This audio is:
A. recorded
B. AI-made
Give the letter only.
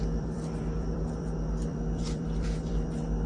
B